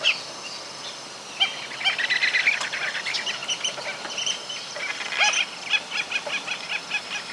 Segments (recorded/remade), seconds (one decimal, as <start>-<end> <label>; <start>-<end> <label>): 0.0-7.3 recorded